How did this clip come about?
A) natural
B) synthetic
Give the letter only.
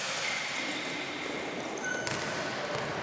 A